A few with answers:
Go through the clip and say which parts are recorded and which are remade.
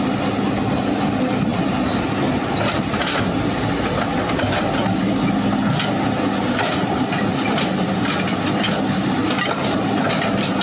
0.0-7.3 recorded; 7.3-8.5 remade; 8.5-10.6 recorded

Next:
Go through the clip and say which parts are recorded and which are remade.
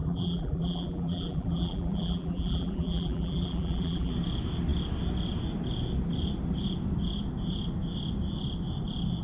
0.0-4.1 remade; 4.1-9.2 recorded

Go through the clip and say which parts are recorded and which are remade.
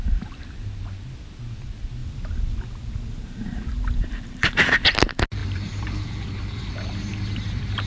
0.0-2.0 recorded; 2.0-4.6 remade; 4.6-5.4 recorded; 5.4-6.7 remade; 6.7-7.9 recorded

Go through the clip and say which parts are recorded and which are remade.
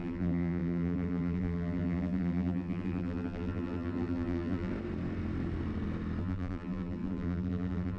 0.0-4.7 remade; 4.7-6.2 recorded; 6.2-8.0 remade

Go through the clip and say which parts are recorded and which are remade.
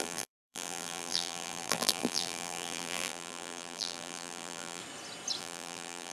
0.0-4.8 remade; 4.8-5.4 recorded; 5.4-6.1 remade